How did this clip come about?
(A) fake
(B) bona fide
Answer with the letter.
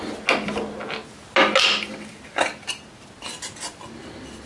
B